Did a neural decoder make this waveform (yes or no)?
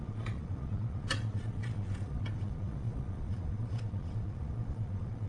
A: yes